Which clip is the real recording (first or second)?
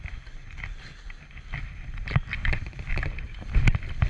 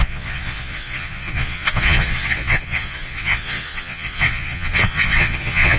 first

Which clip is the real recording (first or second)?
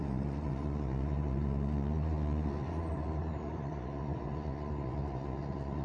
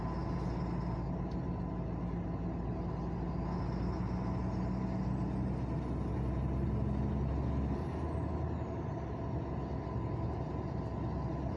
second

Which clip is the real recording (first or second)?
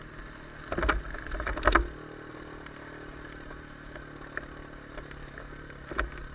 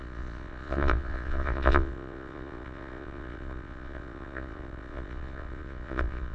first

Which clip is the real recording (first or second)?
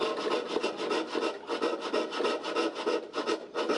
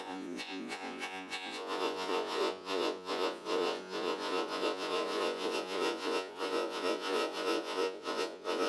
first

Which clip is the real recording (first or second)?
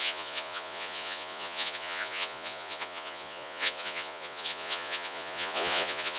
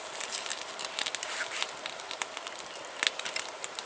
second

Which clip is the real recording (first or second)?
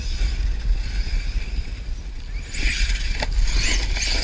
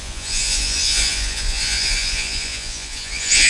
first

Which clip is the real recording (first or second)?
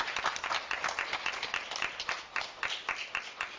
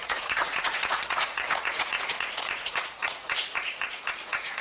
first